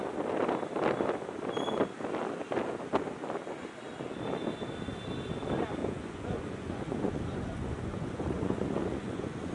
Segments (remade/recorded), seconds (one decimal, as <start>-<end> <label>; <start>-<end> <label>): 0.0-5.8 recorded; 5.8-9.5 remade